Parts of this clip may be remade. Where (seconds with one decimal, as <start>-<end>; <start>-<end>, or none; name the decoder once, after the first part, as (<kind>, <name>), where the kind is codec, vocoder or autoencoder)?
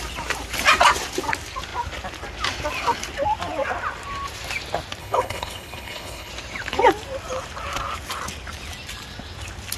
5.0-6.3 (codec, HILCodec)